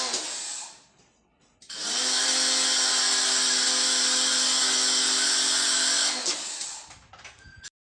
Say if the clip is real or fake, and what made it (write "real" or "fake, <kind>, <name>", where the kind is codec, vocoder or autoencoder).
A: real